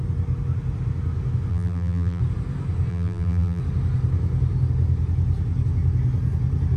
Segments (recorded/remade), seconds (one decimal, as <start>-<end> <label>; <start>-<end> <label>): 0.0-1.5 recorded; 1.5-2.2 remade; 2.2-2.9 recorded; 2.9-3.6 remade; 3.6-6.8 recorded